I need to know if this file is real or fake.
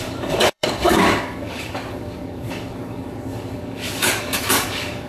fake